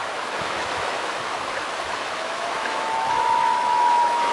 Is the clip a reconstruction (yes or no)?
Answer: yes